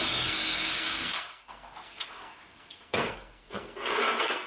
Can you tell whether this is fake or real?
fake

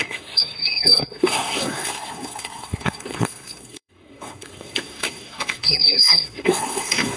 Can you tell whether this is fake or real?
fake